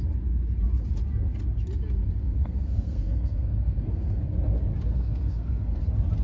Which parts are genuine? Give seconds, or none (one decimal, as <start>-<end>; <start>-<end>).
0.0-2.2; 4.2-4.9; 5.8-6.2